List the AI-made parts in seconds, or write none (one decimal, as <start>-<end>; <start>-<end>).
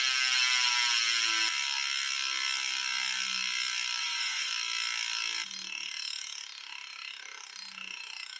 4.0-4.5